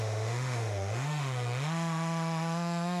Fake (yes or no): yes